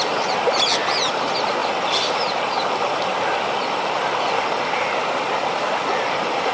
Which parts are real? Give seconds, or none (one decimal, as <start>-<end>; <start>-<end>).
0.0-6.5